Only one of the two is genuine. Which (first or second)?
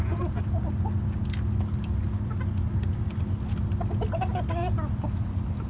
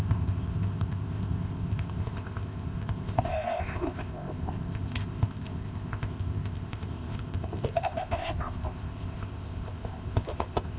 first